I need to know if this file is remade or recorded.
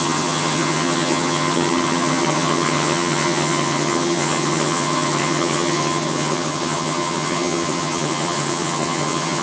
remade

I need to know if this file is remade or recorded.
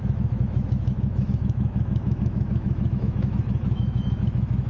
remade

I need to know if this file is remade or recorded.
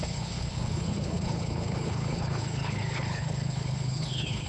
remade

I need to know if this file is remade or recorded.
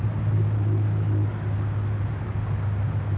recorded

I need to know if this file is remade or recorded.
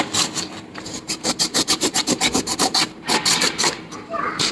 remade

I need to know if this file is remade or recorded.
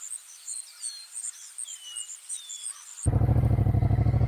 recorded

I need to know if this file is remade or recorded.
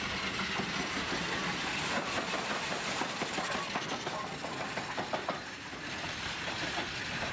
recorded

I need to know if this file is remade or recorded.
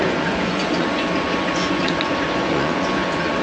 remade